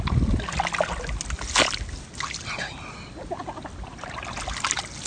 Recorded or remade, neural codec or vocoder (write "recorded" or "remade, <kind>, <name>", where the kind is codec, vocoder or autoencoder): recorded